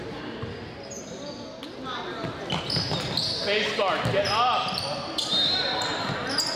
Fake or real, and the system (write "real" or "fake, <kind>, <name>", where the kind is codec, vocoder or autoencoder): real